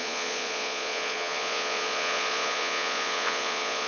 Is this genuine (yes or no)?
no